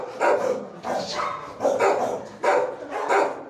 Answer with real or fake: real